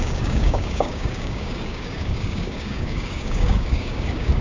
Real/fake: fake